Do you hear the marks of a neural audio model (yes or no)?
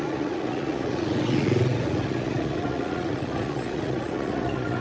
yes